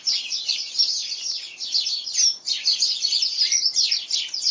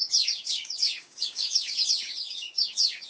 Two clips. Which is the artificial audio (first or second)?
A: second